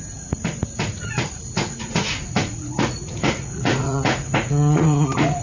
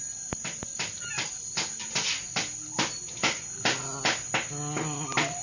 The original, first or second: second